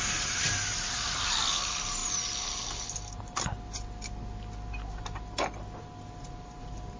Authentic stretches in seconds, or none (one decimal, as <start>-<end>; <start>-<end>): 0.0-7.0